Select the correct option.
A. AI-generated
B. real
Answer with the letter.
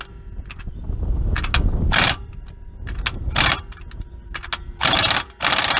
B